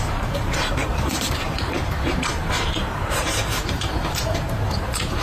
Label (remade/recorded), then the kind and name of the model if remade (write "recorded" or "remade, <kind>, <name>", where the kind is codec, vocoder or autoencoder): remade, vocoder, BigVGAN v2